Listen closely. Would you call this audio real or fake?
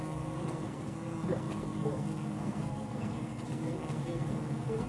fake